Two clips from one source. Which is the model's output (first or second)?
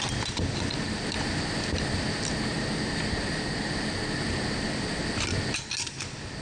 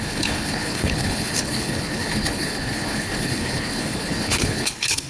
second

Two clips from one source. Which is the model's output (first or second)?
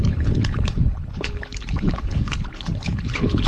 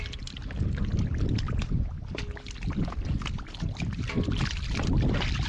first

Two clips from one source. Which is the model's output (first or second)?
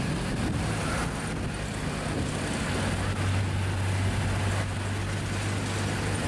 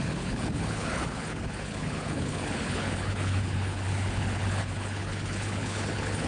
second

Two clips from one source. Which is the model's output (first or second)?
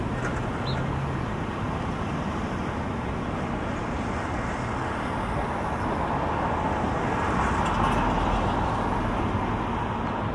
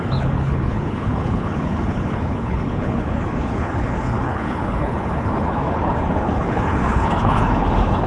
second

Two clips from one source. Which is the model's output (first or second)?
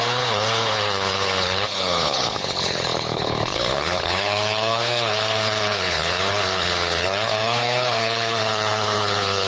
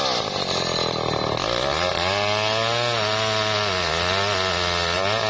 first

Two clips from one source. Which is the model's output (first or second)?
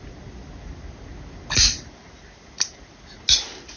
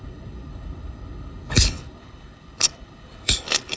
second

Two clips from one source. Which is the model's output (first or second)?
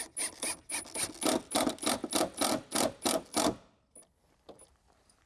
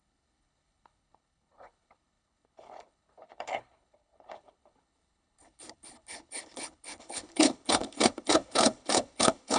second